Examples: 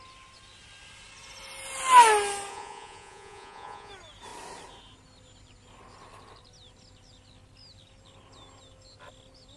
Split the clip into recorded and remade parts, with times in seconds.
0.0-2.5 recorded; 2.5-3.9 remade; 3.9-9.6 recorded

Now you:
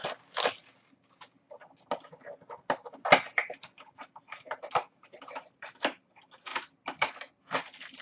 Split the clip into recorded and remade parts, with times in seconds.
0.0-8.0 recorded